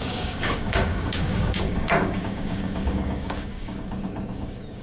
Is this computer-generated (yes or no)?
yes